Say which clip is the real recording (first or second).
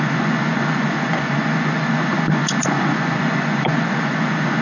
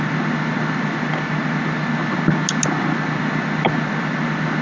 second